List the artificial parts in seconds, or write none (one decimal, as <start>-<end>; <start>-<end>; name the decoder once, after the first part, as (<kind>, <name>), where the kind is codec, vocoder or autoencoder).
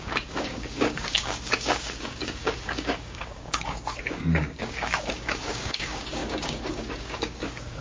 0.0-7.8 (codec, DAC)